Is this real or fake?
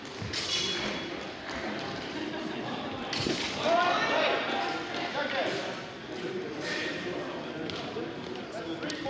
real